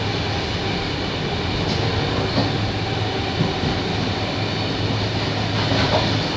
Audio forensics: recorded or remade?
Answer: recorded